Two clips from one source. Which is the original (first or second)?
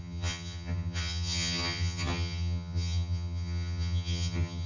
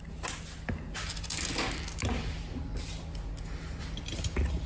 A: second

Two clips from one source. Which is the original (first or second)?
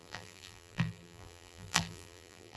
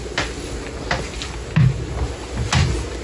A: second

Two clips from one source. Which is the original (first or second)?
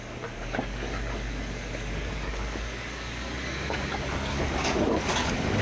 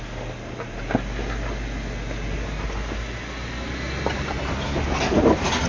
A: second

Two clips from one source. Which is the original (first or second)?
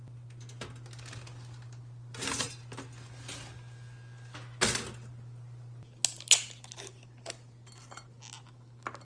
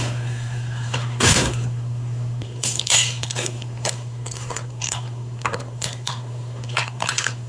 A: first